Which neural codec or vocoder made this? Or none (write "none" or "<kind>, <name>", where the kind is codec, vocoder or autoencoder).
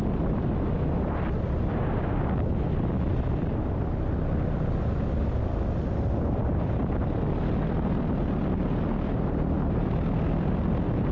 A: none